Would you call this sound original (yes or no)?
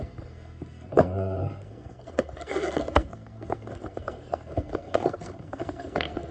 no